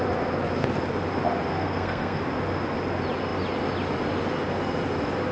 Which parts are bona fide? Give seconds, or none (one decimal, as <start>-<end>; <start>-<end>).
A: 0.0-1.5; 2.2-5.3